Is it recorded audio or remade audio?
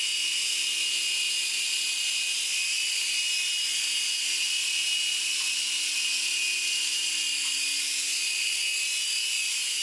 recorded